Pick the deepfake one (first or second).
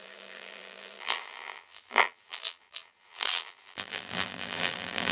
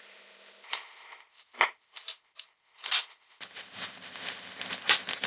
first